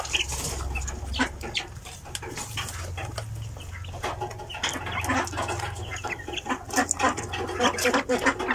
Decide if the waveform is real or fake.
real